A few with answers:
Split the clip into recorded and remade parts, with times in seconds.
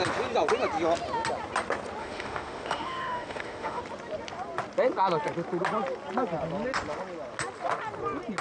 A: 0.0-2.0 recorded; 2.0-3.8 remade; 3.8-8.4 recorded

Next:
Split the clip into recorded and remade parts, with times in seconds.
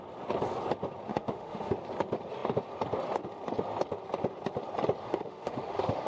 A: 0.0-1.1 recorded; 1.1-1.7 remade; 1.7-5.0 recorded; 5.0-6.1 remade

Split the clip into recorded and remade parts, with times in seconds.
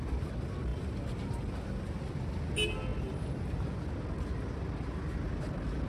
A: 0.0-5.9 recorded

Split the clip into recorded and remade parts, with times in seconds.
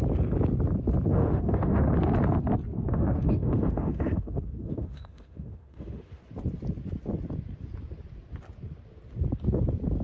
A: 0.0-1.1 recorded; 1.1-1.8 remade; 1.8-2.9 recorded; 2.9-6.2 remade; 6.2-10.0 recorded